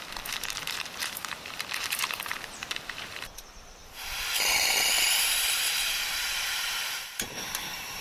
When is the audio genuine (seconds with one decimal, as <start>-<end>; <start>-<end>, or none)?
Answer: none